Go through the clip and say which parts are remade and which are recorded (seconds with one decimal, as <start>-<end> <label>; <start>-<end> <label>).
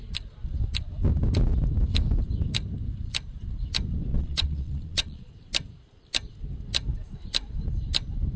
0.0-4.1 recorded; 4.1-5.3 remade; 5.3-8.4 recorded